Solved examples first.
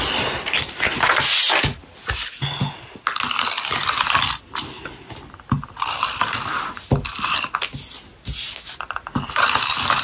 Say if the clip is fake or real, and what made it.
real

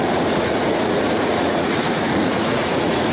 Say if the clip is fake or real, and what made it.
fake, vocoder, Vocos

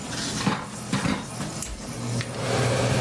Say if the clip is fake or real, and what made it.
real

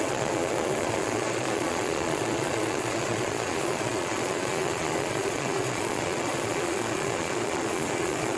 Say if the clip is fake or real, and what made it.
fake, vocoder, Vocos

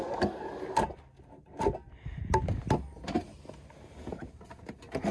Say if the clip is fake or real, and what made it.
real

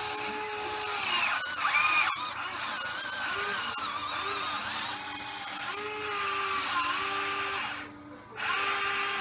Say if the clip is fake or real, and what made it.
real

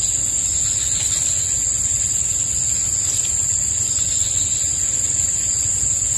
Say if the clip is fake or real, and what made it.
real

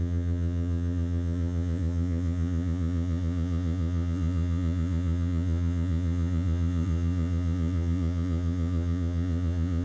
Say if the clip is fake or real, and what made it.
fake, vocoder, Vocos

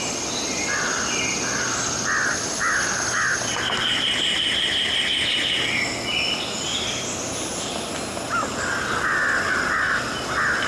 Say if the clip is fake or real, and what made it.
real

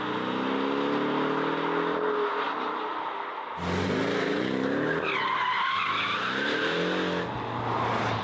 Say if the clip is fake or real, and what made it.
real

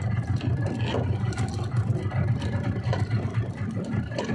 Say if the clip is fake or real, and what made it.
real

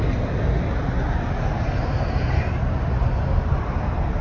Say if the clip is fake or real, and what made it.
real